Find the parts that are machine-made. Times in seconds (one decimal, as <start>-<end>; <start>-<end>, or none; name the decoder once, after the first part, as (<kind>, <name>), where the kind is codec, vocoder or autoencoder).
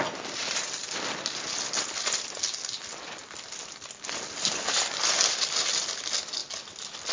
none